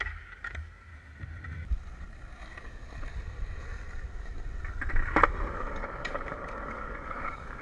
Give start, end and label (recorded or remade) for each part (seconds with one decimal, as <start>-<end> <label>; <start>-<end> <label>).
0.0-0.9 remade; 0.9-5.5 recorded; 5.5-7.6 remade